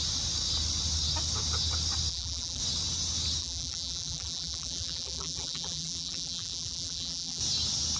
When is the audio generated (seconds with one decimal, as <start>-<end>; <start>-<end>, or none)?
2.1-2.6; 3.4-7.4